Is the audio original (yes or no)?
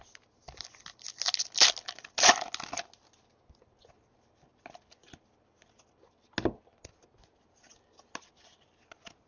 yes